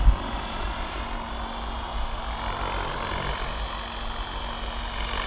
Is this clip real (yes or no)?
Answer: yes